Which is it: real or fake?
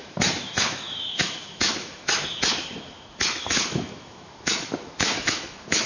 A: fake